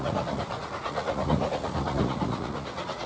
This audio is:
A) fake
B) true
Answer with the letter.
A